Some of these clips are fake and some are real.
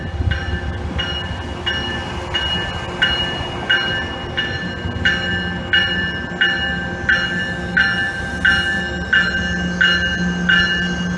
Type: real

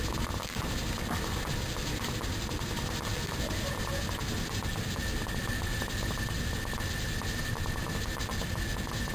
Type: real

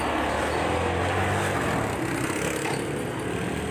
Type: real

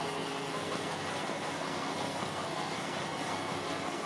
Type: fake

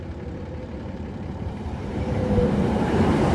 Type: fake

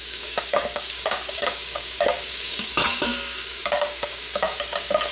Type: fake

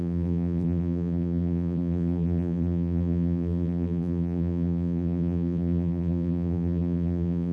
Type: fake